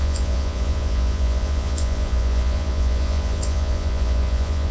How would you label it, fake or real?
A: fake